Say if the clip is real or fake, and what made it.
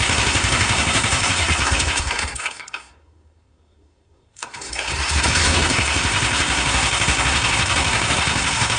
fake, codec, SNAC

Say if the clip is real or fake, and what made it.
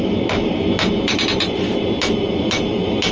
real